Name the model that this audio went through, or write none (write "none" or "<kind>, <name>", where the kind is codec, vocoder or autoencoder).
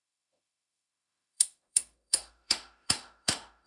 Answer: autoencoder, DAC-VAE